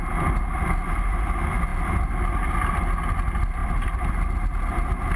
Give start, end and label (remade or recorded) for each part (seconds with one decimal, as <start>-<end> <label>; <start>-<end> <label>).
0.0-5.2 recorded